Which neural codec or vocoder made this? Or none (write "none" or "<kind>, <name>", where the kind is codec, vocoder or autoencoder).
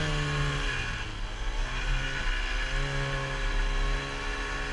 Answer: none